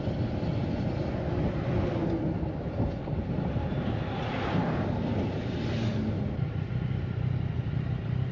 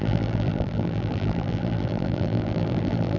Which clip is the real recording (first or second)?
first